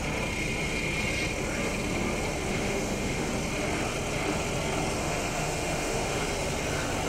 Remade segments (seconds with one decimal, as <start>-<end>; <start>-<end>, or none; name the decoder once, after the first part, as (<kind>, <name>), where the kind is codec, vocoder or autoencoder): 2.5-3.3 (autoencoder, DAC-VAE); 5.0-6.2